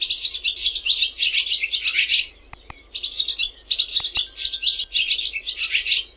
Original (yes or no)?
yes